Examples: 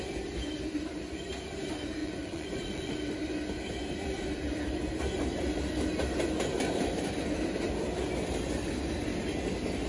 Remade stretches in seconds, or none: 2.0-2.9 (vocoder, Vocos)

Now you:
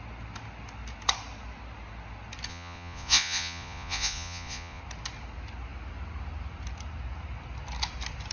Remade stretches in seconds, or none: 2.5-4.8 (vocoder, Vocos)

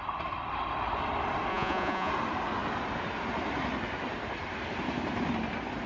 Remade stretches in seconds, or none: 1.5-2.1 (vocoder, Vocos)

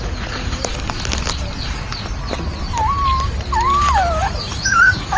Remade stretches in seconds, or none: 0.0-0.6 (vocoder, Vocos); 4.2-5.2

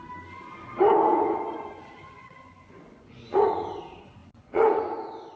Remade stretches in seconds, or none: 0.6-3.8 (vocoder, Vocos); 4.2-4.9